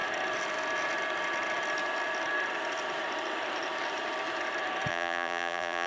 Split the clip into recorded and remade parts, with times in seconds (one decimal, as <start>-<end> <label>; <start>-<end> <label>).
0.0-4.9 recorded; 4.9-5.9 remade